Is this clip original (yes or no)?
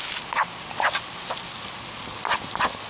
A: yes